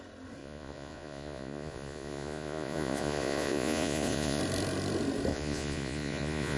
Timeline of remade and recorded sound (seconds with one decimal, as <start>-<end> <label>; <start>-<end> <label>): 0.0-0.4 recorded; 0.4-4.4 remade; 4.4-5.3 recorded; 5.3-6.6 remade